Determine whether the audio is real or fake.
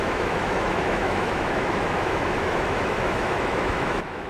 fake